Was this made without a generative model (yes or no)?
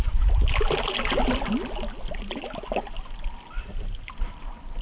yes